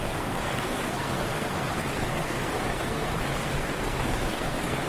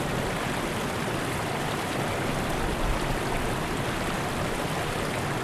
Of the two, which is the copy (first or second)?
first